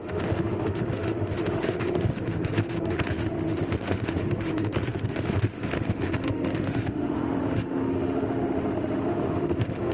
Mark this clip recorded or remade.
remade